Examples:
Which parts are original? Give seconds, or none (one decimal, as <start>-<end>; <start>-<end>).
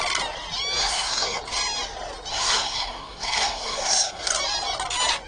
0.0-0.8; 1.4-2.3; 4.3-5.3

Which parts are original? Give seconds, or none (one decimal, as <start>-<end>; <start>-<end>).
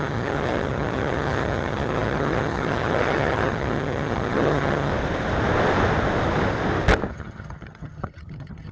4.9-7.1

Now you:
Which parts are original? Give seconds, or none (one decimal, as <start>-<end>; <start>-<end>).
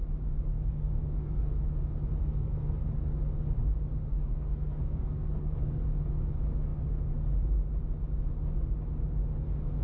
0.0-0.5; 1.5-2.2; 2.8-4.1; 5.8-9.8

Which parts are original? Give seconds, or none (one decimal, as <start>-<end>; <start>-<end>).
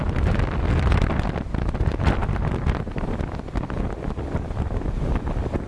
0.0-5.7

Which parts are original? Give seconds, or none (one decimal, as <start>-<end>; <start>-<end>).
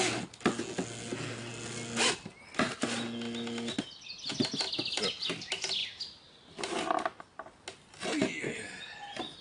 0.0-9.4